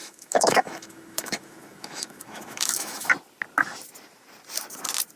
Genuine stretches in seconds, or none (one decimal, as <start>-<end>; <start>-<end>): 3.1-5.2